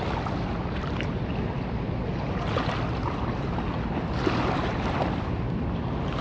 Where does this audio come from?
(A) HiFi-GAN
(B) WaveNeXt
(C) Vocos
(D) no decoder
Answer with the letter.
D